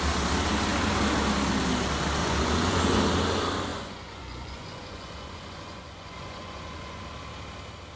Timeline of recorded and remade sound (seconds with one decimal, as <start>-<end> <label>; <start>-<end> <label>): 0.0-2.2 recorded; 2.2-3.0 remade; 3.0-3.7 recorded; 3.7-7.0 remade; 7.0-8.0 recorded